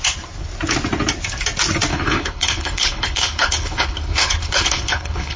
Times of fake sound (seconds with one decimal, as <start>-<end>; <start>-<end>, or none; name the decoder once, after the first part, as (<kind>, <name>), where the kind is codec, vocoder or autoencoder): 1.9-5.4 (codec, HILCodec)